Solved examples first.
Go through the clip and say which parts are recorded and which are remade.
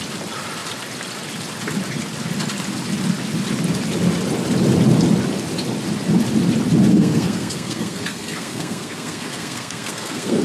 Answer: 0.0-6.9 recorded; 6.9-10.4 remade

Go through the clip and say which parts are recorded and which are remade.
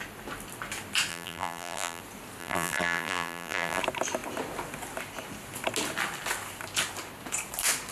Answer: 0.0-1.1 recorded; 1.1-2.0 remade; 2.0-2.4 recorded; 2.4-3.8 remade; 3.8-7.9 recorded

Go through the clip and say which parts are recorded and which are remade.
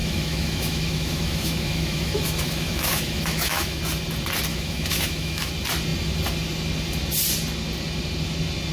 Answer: 0.0-3.8 remade; 3.8-4.5 recorded; 4.5-5.5 remade; 5.5-8.7 recorded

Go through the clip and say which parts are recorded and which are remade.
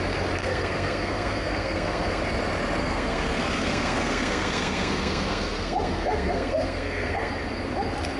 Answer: 0.0-0.4 recorded; 0.4-2.2 remade; 2.2-2.8 recorded; 2.8-7.3 remade; 7.3-8.2 recorded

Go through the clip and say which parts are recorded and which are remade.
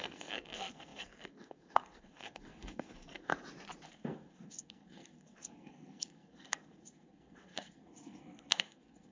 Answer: 0.0-3.3 remade; 3.3-3.9 recorded; 3.9-9.1 remade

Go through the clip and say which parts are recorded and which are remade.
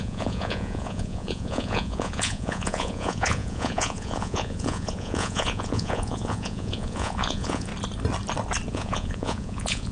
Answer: 0.0-7.7 remade; 7.7-8.7 recorded; 8.7-9.9 remade